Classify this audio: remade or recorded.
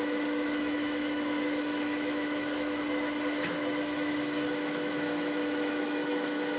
remade